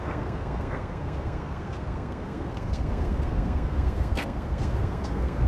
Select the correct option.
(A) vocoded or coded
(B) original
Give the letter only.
A